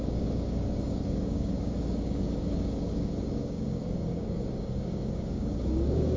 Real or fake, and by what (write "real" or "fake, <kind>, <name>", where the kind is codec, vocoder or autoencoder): fake, codec, DAC